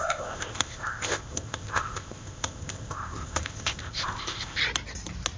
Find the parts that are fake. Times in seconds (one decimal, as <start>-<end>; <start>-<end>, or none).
0.0-4.6